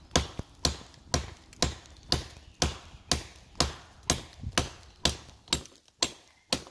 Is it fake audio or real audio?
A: real